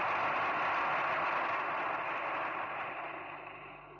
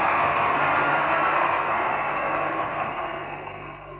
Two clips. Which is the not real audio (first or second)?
second